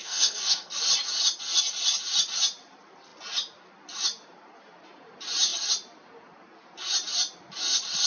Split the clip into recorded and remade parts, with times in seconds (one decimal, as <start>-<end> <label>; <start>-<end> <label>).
0.0-0.7 remade; 0.7-8.1 recorded

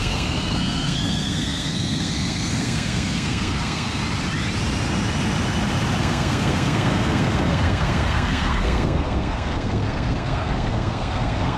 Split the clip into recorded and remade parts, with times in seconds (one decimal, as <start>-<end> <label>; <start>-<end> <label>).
0.0-4.0 remade; 4.0-6.0 recorded; 6.0-11.6 remade

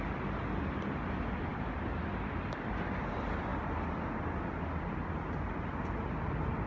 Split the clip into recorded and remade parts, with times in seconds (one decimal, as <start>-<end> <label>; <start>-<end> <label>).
0.0-6.7 recorded

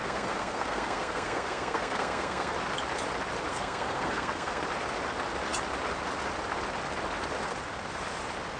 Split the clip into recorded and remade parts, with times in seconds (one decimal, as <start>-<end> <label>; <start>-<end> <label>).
0.0-2.5 remade; 2.5-3.5 recorded; 3.5-4.6 remade; 4.6-8.6 recorded

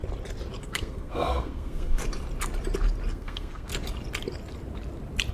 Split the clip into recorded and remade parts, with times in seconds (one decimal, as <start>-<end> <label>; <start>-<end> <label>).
0.0-0.6 recorded; 0.6-2.0 remade; 2.0-3.1 recorded; 3.1-3.7 remade; 3.7-5.3 recorded

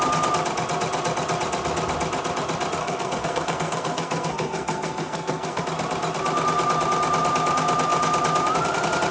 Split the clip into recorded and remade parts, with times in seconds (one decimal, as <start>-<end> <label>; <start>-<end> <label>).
0.0-2.8 recorded; 2.8-5.6 remade; 5.6-9.1 recorded